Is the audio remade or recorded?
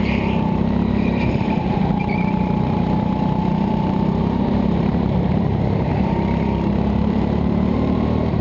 remade